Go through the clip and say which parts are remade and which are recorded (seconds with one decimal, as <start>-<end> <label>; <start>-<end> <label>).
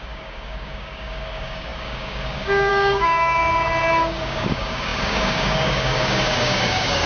0.0-3.4 remade; 3.4-3.9 recorded; 3.9-7.1 remade